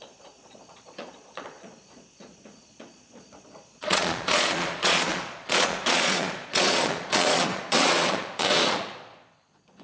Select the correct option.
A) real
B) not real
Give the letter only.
B